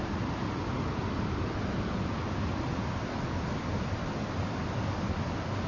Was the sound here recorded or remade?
recorded